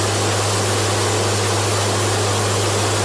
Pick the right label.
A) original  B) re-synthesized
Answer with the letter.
A